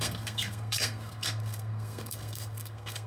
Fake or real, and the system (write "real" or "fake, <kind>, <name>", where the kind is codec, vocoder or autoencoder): fake, codec, SNAC